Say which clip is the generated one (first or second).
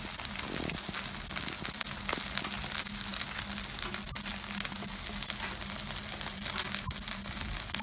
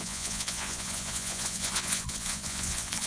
second